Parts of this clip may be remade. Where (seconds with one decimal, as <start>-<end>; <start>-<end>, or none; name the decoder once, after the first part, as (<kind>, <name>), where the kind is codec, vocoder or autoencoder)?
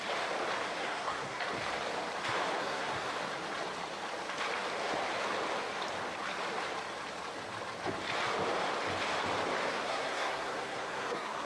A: 0.8-1.4 (codec, SNAC); 2.6-3.1; 9.7-11.5